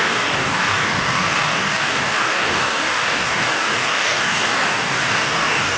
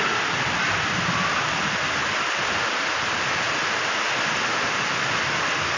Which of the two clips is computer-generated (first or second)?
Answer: first